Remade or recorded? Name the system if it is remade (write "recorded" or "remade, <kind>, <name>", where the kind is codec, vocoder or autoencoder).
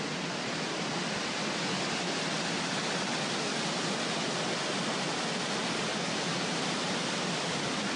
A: recorded